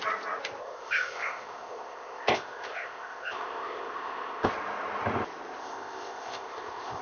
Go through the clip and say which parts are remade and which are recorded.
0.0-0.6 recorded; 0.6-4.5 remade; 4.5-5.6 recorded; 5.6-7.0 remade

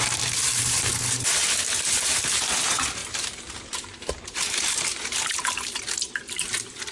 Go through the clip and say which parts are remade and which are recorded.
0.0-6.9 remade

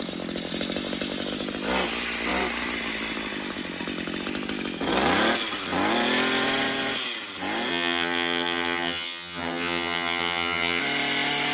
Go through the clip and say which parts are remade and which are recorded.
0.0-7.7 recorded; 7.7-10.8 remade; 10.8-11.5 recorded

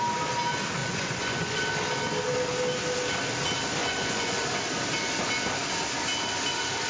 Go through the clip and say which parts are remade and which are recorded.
0.0-0.8 recorded; 0.8-1.6 remade; 1.6-3.8 recorded; 3.8-4.4 remade; 4.4-6.9 recorded

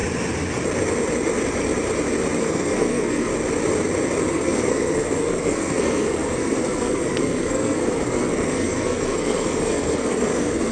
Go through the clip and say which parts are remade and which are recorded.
0.0-2.4 recorded; 2.4-3.3 remade; 3.3-4.3 recorded; 4.3-10.7 remade

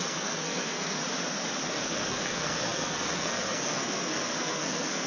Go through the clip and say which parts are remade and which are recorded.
0.0-1.0 remade; 1.0-1.7 recorded; 1.7-5.1 remade